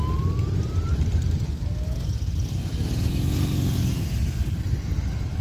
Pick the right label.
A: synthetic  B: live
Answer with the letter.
B